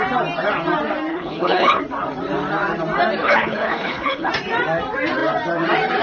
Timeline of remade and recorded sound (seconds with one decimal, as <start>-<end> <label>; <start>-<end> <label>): 0.0-1.1 recorded; 1.1-1.8 remade; 1.8-3.2 recorded; 3.2-4.3 remade; 4.3-6.0 recorded

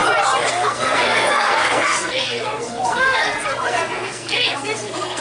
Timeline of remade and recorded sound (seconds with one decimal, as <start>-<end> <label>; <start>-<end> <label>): 0.0-0.5 recorded; 0.5-5.2 remade